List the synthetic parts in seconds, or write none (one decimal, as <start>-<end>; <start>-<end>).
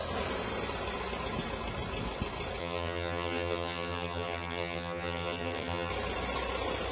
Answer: 2.6-5.9